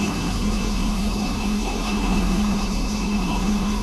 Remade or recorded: remade